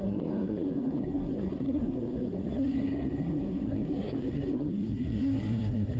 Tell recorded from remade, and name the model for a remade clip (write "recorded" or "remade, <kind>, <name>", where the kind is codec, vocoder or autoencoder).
remade, codec, SNAC